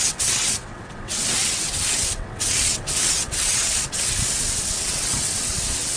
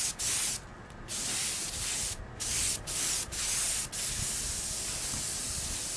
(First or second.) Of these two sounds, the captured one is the second